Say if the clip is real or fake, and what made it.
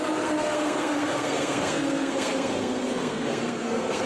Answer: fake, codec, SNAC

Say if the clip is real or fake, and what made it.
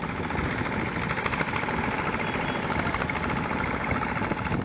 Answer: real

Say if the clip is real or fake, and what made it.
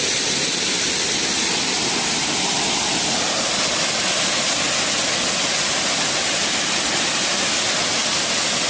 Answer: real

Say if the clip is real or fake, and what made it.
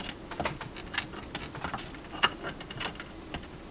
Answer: real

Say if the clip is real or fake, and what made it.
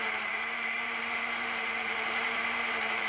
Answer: fake, vocoder, BigVGAN v2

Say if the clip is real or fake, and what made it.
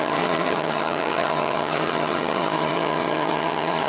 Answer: fake, vocoder, HiFi-GAN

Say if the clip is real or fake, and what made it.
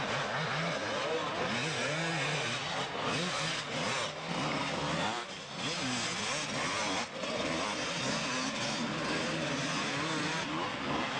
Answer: real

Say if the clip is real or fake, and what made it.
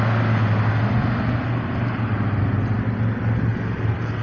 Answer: real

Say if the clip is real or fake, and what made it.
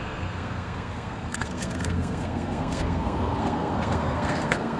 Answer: fake, codec, SNAC